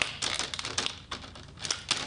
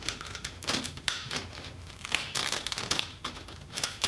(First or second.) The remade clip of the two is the second